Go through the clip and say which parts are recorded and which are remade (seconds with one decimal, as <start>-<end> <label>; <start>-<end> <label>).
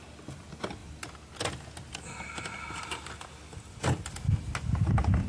0.0-5.3 recorded